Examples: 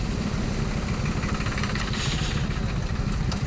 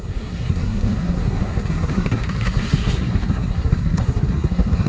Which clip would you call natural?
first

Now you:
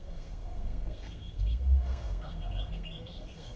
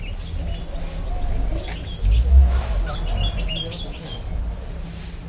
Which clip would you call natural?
second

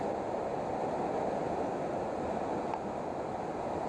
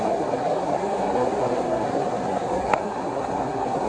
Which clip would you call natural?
first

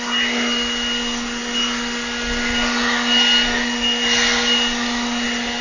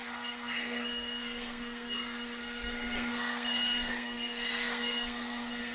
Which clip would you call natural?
first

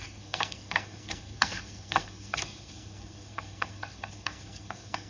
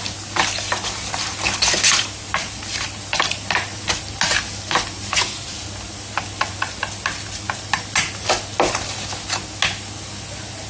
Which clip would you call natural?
second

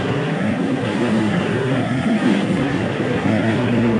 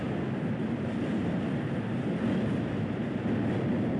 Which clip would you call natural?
second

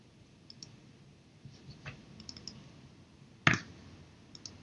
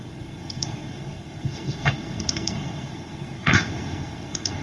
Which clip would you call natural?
first